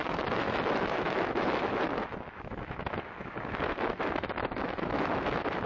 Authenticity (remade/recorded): remade